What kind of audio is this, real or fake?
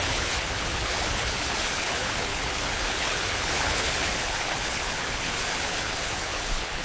fake